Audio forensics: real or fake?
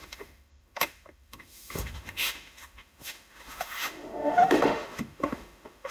fake